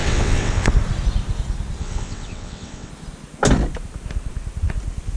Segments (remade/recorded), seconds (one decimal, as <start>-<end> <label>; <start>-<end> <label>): 0.0-0.7 remade; 0.7-1.8 recorded; 1.8-2.9 remade; 2.9-5.2 recorded